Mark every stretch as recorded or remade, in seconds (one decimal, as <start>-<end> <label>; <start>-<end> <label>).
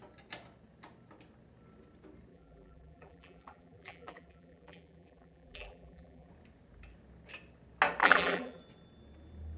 0.0-2.3 recorded; 2.3-6.3 remade; 6.3-8.0 recorded; 8.0-8.6 remade; 8.6-9.6 recorded